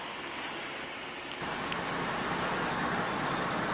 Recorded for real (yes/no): yes